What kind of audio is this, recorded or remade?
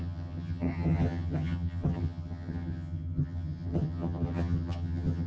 remade